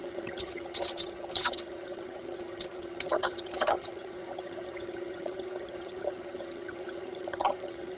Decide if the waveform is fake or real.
fake